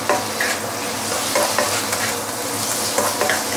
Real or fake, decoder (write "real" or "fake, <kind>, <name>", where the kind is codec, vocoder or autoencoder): real